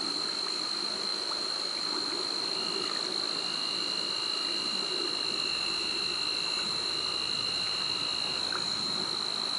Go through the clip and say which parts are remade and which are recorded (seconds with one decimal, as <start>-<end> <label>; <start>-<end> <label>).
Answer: 0.0-9.6 recorded